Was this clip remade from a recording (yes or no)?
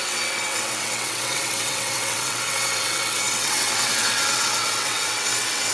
yes